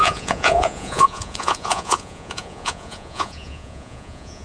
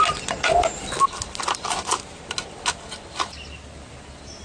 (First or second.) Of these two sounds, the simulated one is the first